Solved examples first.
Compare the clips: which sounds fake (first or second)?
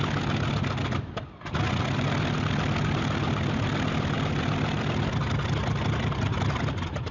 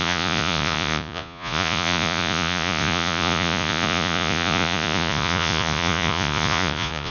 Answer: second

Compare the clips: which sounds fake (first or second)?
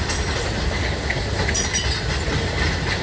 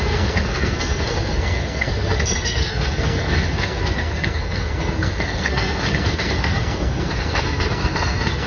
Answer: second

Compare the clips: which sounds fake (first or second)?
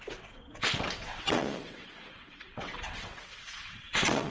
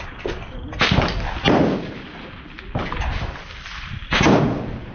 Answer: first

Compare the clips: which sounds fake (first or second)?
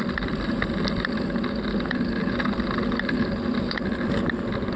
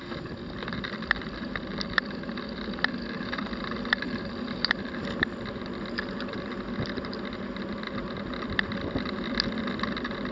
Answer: second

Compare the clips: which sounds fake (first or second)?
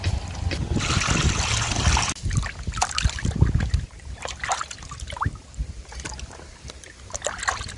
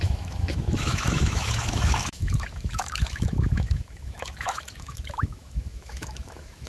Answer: second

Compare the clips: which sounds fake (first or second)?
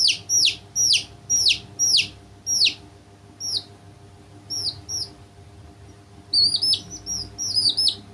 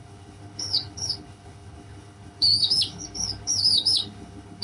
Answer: second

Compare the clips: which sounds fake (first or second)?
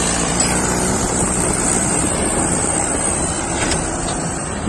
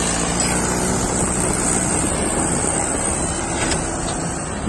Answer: first